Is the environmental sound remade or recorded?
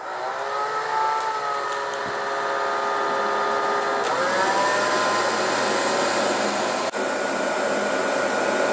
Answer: recorded